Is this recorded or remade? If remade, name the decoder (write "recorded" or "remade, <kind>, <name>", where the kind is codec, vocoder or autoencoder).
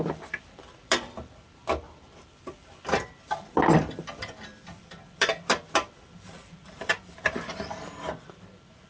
remade, vocoder, BigVGAN v2